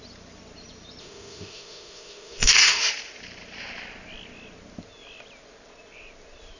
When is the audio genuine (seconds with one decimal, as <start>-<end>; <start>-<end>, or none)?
0.0-1.0; 2.9-6.6